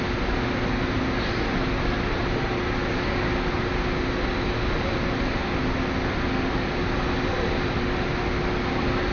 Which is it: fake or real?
real